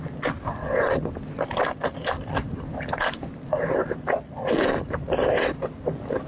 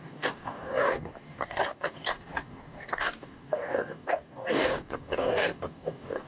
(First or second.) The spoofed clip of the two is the second